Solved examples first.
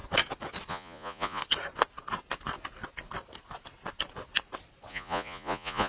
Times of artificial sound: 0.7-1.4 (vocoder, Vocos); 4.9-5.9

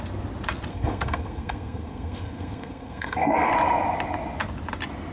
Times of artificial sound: 0.7-3.5 (codec, SNAC)

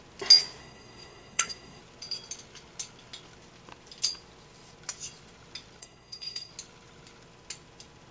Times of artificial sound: 0.6-1.8 (codec, SNAC); 5.8-6.5

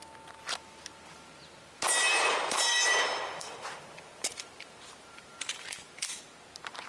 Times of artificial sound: 2.1-6.2 (vocoder, BigVGAN v2)

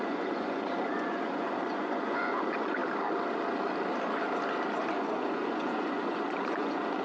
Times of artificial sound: 0.0-2.8 (vocoder, Vocos); 4.9-7.0

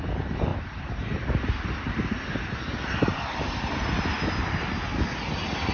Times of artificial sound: 0.5-1.0 (vocoder, BigVGAN v2); 3.1-3.7

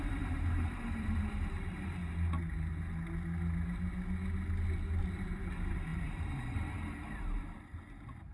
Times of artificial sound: 0.0-2.0 (vocoder, BigVGAN v2); 5.0-8.3

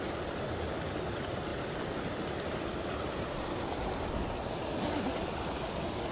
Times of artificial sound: none